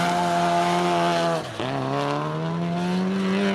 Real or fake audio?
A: real